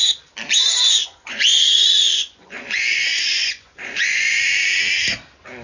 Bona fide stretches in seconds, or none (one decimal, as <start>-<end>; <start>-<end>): 0.0-1.0; 4.4-5.6